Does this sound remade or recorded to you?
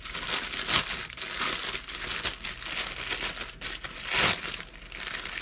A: recorded